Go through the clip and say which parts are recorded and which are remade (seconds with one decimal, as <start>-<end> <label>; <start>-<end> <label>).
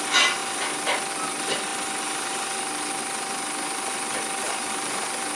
0.0-5.3 recorded